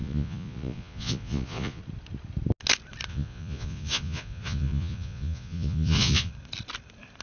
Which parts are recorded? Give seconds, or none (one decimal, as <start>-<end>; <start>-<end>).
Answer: 1.8-3.1; 6.3-7.2